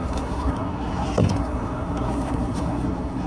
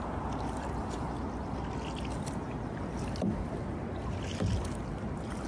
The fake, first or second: first